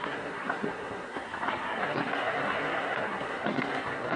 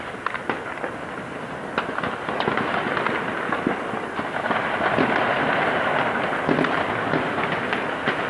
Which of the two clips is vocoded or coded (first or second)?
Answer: first